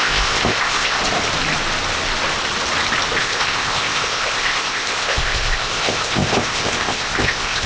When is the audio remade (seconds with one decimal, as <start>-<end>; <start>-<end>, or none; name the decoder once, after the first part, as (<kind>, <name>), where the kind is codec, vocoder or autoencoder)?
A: 0.0-1.0 (codec, ZipCodec); 3.2-7.7